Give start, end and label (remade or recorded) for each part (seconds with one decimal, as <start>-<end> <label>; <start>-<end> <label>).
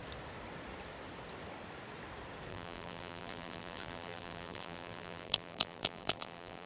0.0-2.5 recorded; 2.5-6.7 remade